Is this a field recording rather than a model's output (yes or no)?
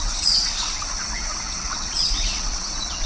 no